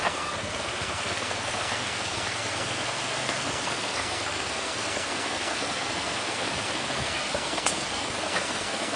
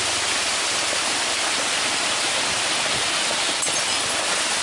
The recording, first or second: second